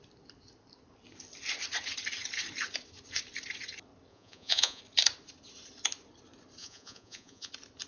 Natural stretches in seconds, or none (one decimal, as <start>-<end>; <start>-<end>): 0.0-4.1; 4.8-6.6; 7.5-7.9